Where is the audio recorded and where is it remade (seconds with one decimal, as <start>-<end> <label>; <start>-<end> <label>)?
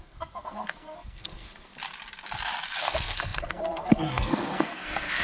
0.0-1.7 remade; 1.7-2.8 recorded; 2.8-5.2 remade